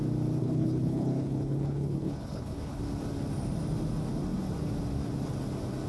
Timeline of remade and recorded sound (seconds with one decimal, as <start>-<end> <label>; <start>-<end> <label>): 0.0-0.4 recorded; 0.4-2.8 remade; 2.8-5.9 recorded

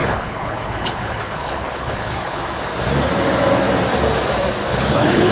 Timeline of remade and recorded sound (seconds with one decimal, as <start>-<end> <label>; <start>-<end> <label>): 0.0-2.4 remade; 2.4-4.6 recorded; 4.6-5.3 remade

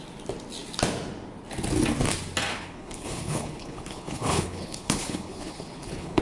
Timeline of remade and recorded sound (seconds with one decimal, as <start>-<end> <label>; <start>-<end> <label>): 0.0-2.5 recorded; 2.5-6.2 remade

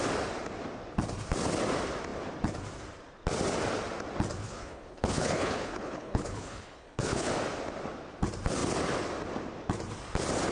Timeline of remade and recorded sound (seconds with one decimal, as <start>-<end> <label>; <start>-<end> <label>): 0.0-4.4 recorded; 4.4-7.3 remade; 7.3-10.5 recorded

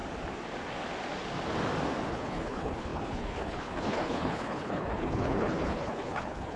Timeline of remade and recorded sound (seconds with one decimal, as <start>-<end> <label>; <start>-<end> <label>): 0.0-2.1 recorded; 2.1-6.6 remade

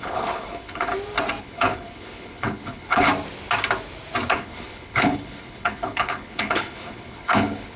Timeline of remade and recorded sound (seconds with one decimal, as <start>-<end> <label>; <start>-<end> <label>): 0.0-0.9 remade; 0.9-1.4 recorded; 1.4-3.1 remade; 3.1-4.3 recorded; 4.3-7.8 remade